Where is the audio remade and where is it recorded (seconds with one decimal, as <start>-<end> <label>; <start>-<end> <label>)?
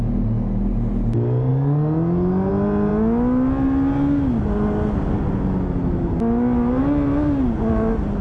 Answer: 0.0-8.2 recorded